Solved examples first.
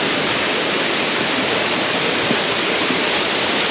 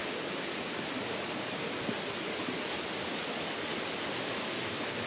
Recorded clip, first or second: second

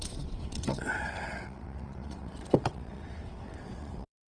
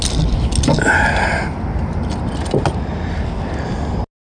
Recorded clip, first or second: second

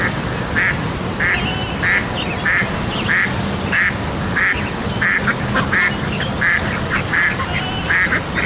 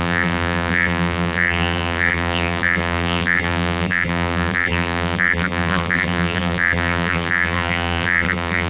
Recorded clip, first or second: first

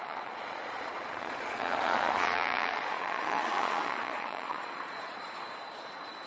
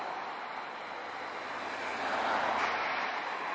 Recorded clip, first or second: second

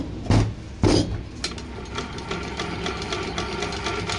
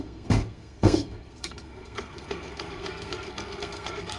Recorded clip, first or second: first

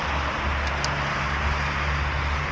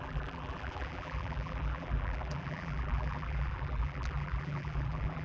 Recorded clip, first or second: first